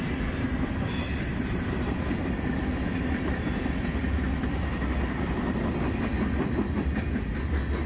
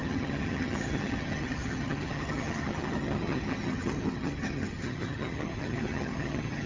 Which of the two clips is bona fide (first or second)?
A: first